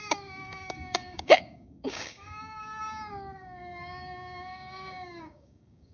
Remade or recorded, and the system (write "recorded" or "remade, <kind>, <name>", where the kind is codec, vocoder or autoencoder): remade, codec, DAC